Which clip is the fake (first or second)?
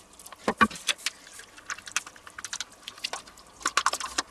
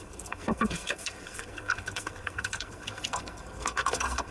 second